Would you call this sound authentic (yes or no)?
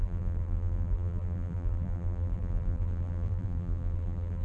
no